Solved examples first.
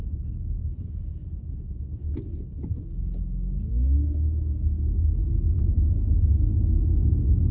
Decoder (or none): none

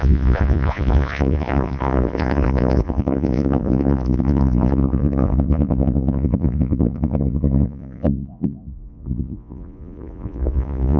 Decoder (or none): vocoder, Vocos